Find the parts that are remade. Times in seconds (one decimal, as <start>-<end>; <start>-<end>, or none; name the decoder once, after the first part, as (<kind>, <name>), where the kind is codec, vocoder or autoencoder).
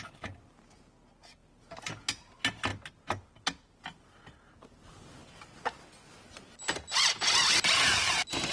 none